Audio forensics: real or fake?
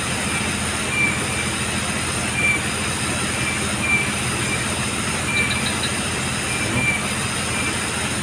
real